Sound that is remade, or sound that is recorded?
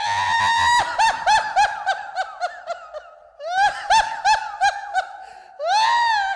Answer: recorded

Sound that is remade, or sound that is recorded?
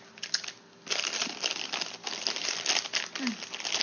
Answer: recorded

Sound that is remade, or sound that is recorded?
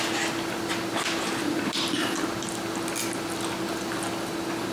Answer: recorded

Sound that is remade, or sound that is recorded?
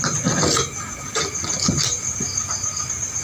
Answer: recorded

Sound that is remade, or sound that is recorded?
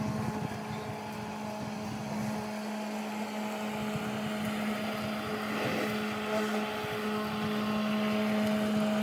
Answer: recorded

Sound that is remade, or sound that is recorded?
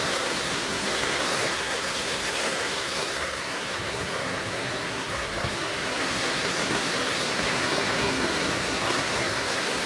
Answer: remade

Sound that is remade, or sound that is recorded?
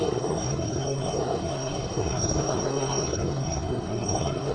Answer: remade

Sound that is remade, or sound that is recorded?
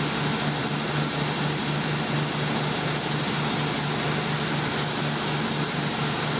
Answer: recorded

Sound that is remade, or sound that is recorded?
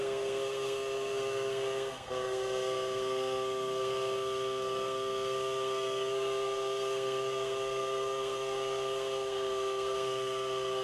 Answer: remade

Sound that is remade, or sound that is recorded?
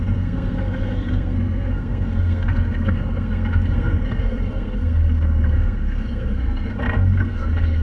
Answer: remade